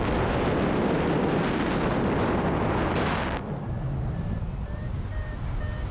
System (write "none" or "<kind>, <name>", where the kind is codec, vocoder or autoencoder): none